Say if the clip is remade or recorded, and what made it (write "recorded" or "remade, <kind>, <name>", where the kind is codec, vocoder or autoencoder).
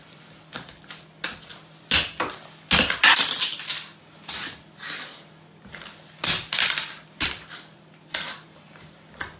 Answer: recorded